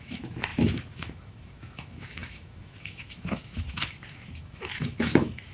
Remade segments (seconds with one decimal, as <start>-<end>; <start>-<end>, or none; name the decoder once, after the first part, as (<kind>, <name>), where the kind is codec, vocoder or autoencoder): 0.0-5.5 (autoencoder, DAC-VAE)